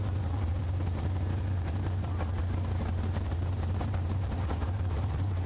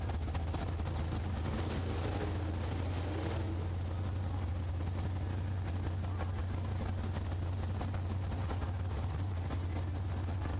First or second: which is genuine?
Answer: second